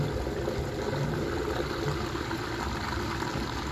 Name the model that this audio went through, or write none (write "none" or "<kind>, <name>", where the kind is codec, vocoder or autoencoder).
none